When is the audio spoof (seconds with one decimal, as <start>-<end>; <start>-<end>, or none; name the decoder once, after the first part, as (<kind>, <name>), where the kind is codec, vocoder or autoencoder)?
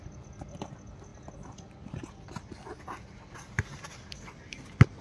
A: none